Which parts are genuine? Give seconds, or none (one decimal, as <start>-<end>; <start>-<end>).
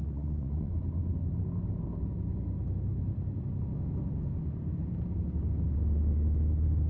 0.7-6.9